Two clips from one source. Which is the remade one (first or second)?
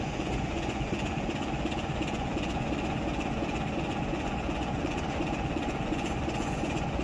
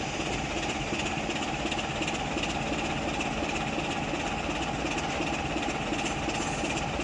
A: first